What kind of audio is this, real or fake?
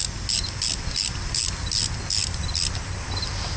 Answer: real